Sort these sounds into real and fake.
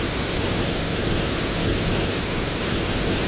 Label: fake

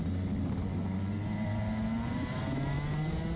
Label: real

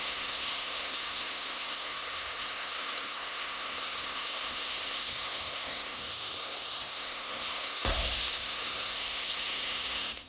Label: fake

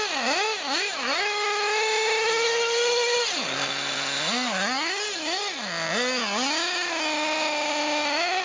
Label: real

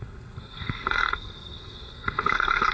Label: fake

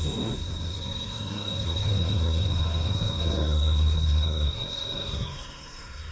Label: fake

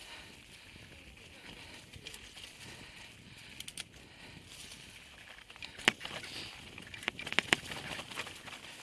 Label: real